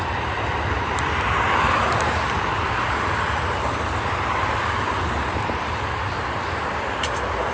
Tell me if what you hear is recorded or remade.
recorded